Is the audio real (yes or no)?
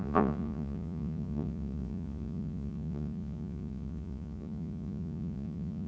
no